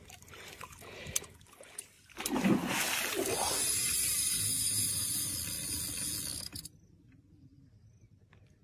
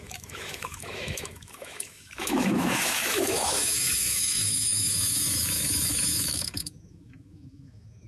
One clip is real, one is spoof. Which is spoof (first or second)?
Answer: second